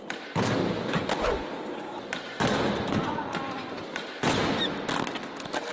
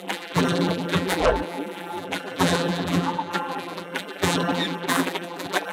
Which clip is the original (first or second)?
first